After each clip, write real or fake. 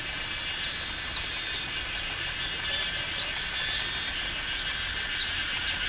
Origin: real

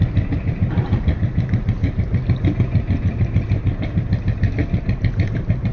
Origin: real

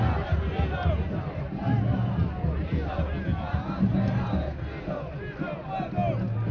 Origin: real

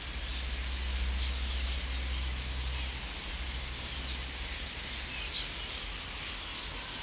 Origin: real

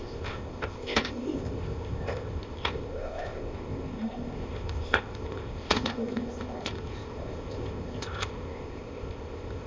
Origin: fake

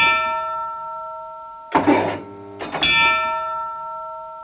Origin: real